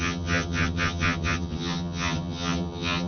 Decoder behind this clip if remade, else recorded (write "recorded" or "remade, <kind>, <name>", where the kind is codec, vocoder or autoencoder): remade, vocoder, HiFi-GAN